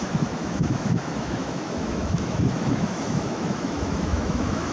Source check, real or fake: fake